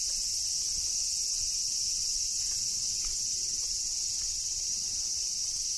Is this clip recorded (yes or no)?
yes